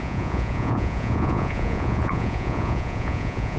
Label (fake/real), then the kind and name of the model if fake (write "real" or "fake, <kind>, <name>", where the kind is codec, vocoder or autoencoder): fake, vocoder, Vocos